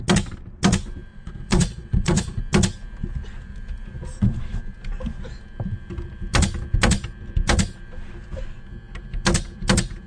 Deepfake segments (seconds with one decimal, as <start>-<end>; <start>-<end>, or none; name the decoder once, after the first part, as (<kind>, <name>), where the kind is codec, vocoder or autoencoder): 1.1-2.4 (vocoder, Vocos)